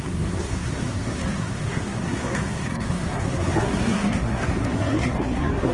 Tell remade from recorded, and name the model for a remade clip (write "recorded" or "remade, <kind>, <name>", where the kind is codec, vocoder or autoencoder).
remade, codec, SNAC